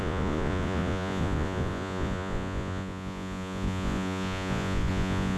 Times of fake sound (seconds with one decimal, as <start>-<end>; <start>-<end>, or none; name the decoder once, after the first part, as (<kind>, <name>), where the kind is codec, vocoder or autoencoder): 0.0-5.4 (vocoder, Vocos)